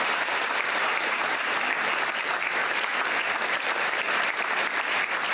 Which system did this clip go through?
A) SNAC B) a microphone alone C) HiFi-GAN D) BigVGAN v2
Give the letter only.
D